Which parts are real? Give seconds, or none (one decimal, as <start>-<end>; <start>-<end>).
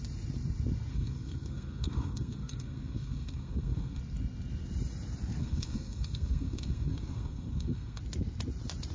0.0-0.9; 4.0-5.4; 8.0-8.9